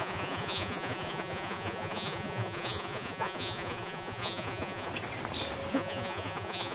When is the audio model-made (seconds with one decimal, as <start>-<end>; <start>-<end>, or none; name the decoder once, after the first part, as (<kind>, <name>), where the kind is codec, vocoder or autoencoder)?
0.0-4.9 (vocoder, Vocos); 5.7-6.7